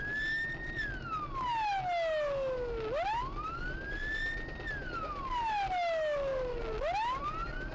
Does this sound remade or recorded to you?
recorded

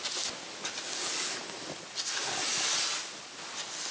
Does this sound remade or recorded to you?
recorded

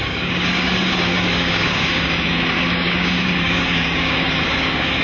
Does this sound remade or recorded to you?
remade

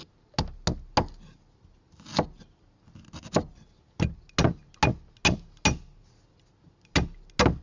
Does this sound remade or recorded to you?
recorded